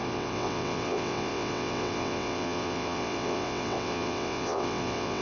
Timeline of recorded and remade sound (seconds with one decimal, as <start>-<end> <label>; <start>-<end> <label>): 0.0-5.2 remade